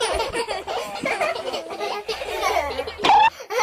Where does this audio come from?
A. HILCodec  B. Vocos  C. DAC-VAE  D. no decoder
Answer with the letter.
D